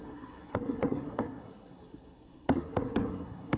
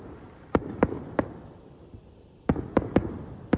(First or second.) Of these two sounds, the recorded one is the second